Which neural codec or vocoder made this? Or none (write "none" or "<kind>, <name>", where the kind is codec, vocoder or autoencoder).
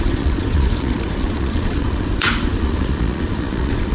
vocoder, Vocos